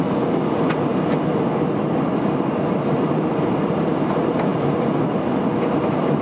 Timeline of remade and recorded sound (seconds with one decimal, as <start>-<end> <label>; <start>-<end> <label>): 0.0-6.2 recorded